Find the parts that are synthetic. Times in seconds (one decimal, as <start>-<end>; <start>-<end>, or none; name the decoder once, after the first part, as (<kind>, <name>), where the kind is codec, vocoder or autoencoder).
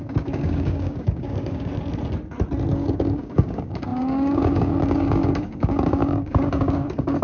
0.0-1.7 (codec, DAC); 2.7-7.2